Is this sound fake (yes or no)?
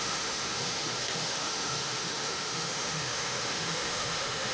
yes